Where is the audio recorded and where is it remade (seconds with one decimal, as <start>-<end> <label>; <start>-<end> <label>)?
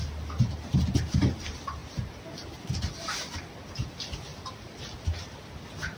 0.0-4.3 recorded; 4.3-4.8 remade; 4.8-6.0 recorded